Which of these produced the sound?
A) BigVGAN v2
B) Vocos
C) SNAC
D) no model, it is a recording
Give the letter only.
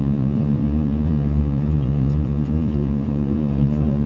B